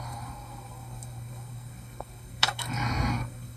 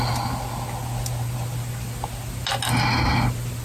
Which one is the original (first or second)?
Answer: second